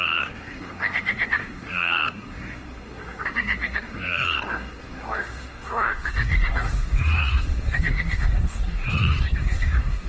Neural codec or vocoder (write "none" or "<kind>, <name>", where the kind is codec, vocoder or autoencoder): codec, SNAC